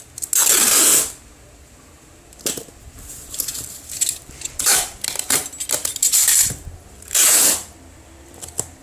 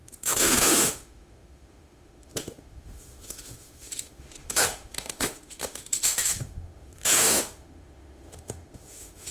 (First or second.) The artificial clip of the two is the second